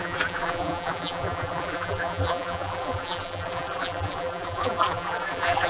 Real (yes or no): no